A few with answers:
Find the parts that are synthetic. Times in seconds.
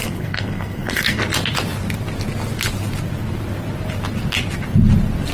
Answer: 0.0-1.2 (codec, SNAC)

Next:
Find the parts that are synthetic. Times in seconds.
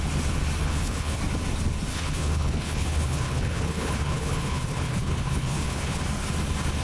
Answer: 0.6-1.2 (codec, HILCodec); 1.9-6.0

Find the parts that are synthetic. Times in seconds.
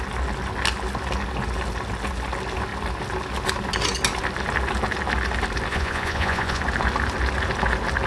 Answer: 5.7-6.6 (vocoder, Vocos)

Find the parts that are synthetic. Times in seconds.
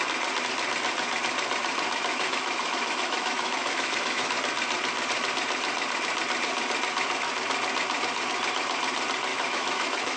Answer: 2.1-4.3 (autoencoder, DAC-VAE); 9.3-10.2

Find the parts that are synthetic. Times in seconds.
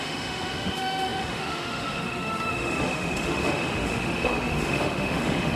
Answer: 0.0-5.6 (autoencoder, DAC-VAE)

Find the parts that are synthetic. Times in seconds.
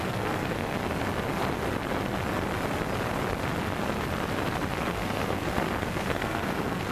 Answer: 0.0-0.8 (codec, SNAC); 4.9-6.9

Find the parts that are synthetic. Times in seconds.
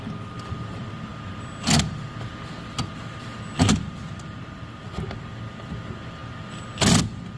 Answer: 0.0-1.1 (vocoder, BigVGAN v2); 3.7-7.4